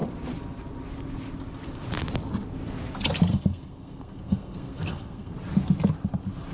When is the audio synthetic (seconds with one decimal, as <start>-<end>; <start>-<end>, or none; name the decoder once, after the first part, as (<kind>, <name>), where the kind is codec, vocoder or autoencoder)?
3.3-5.3 (codec, SNAC)